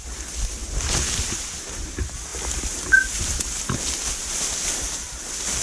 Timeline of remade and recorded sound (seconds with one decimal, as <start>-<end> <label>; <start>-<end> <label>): 0.0-5.6 recorded